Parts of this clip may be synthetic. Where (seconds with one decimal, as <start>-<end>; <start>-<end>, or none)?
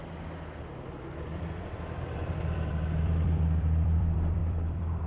0.6-5.1